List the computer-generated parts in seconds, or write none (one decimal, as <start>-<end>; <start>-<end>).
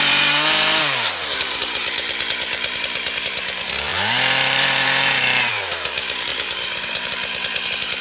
0.0-8.0